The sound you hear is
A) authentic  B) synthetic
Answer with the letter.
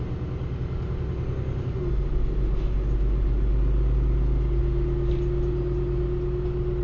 A